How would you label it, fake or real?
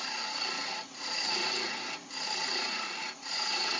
fake